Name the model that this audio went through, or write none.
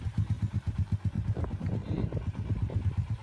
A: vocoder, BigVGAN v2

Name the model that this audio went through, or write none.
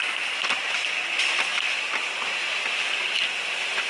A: none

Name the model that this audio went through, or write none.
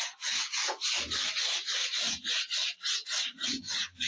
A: vocoder, BigVGAN v2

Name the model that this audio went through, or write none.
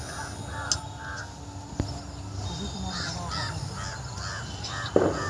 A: none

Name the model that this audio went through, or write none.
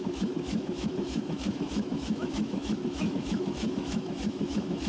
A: autoencoder, DAC-VAE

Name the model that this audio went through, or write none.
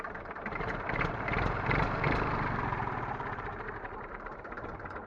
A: vocoder, BigVGAN v2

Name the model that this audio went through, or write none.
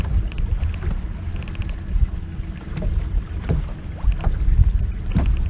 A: none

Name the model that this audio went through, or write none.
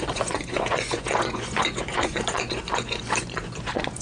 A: vocoder, Vocos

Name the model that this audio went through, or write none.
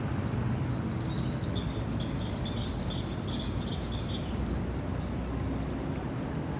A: none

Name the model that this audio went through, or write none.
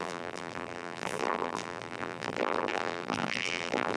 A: vocoder, BigVGAN v2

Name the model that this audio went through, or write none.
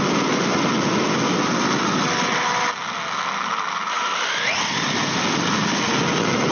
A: none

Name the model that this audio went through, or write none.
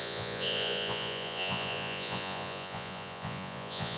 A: vocoder, Vocos